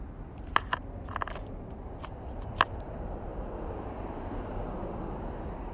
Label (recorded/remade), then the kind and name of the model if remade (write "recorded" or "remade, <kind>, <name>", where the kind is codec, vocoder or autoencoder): recorded